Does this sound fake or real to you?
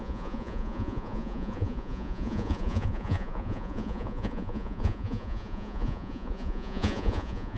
fake